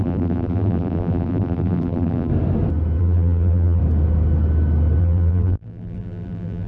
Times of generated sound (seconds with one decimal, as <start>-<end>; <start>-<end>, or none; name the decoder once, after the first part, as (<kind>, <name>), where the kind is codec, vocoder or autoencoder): 0.0-2.3 (vocoder, BigVGAN v2); 3.0-3.8; 5.0-6.7